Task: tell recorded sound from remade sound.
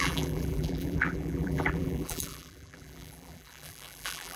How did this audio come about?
remade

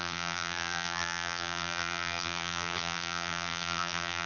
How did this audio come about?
remade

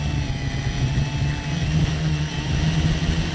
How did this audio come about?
recorded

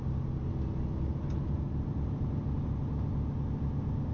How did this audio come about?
recorded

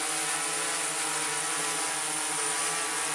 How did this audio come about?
recorded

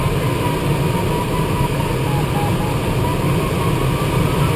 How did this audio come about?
recorded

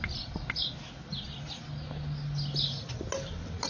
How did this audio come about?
recorded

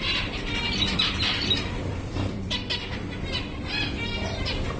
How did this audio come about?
remade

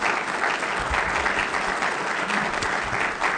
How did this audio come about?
recorded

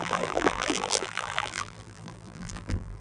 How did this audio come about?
remade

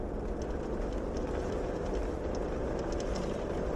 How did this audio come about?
remade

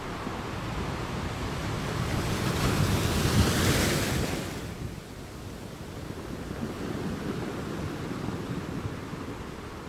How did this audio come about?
recorded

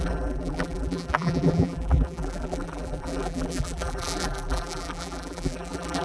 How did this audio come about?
remade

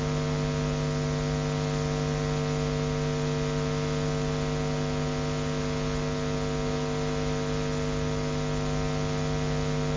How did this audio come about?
recorded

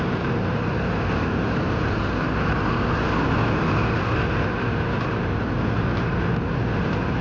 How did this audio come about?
remade